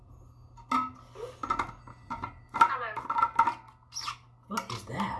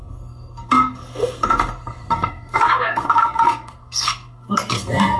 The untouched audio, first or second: first